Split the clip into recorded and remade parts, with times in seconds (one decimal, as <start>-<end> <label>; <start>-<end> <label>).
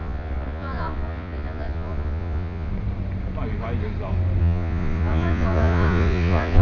0.0-2.7 remade; 2.7-4.4 recorded; 4.4-6.6 remade